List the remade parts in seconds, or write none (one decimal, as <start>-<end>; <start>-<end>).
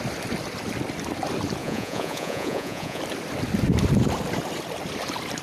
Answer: 1.6-3.0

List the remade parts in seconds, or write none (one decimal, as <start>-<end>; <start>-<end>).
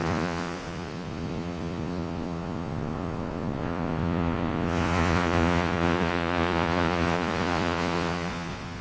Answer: 0.0-8.8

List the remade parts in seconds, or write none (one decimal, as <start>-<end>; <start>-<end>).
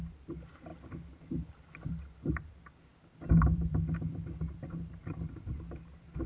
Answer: none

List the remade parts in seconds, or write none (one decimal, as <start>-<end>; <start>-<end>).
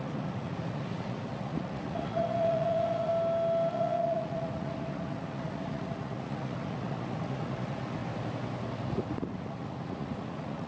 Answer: 0.0-3.1; 3.7-8.0; 8.7-10.7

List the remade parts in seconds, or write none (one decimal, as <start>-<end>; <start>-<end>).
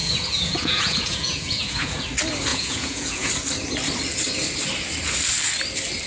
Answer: 0.0-2.0; 2.5-3.3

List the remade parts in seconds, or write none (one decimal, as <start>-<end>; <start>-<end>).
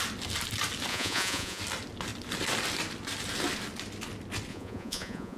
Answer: 0.9-1.6; 4.5-5.4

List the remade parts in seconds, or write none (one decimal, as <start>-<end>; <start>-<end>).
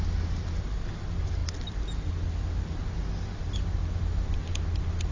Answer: none